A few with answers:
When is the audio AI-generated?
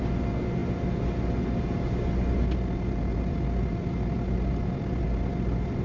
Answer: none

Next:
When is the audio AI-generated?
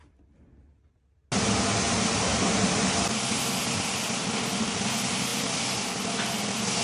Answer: none